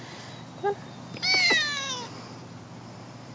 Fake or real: real